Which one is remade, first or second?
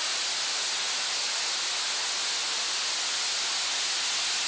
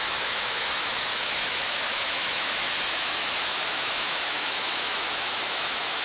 second